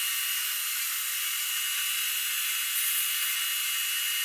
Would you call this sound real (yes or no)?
yes